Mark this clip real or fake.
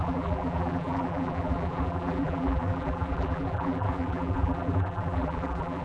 fake